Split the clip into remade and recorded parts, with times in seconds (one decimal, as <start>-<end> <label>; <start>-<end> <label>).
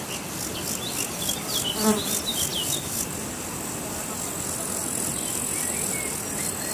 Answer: 0.0-6.7 recorded